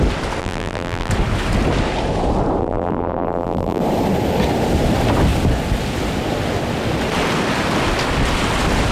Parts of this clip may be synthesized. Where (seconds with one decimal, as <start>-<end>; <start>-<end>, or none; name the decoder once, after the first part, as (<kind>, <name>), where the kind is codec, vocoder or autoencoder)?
0.4-1.1 (vocoder, BigVGAN v2); 2.6-3.8